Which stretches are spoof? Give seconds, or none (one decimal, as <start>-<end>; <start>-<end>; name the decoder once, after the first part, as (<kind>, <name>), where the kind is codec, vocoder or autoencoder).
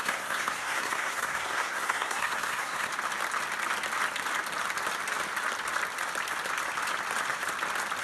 0.0-2.9 (codec, SNAC)